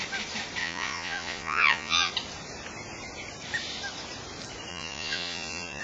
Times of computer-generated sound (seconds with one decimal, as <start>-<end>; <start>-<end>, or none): 0.6-2.1; 4.7-5.8